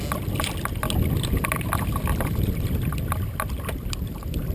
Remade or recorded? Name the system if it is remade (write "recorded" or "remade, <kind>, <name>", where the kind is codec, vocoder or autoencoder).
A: recorded